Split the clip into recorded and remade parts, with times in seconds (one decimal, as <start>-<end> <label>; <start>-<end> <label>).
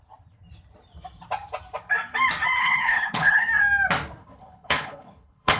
0.0-2.6 recorded; 2.6-3.5 remade; 3.5-4.2 recorded; 4.2-5.6 remade